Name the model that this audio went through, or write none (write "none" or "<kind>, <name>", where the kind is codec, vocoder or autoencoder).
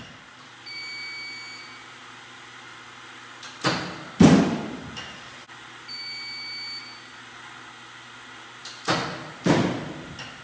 none